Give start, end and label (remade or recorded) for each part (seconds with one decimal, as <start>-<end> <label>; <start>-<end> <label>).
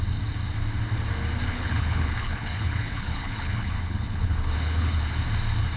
0.0-1.5 recorded; 1.5-5.0 remade; 5.0-5.8 recorded